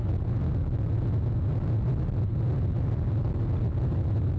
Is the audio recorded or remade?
recorded